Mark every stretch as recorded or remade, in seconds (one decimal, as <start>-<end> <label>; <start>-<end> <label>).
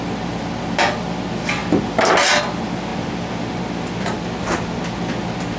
0.0-5.6 recorded